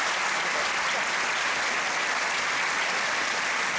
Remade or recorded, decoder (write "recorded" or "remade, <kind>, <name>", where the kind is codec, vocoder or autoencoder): recorded